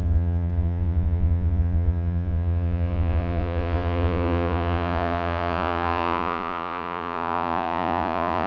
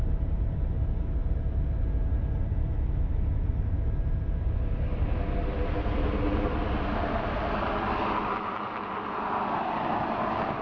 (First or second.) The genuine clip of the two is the second